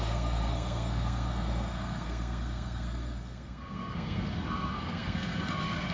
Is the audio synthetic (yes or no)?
yes